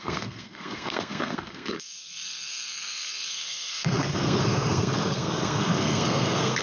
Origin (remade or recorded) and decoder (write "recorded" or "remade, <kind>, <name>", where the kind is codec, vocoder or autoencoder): remade, codec, SNAC